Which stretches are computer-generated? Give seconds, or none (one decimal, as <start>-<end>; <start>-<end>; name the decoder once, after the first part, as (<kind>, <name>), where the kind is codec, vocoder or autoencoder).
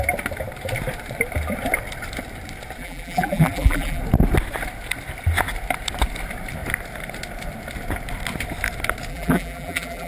2.8-4.0 (vocoder, BigVGAN v2); 9.1-10.1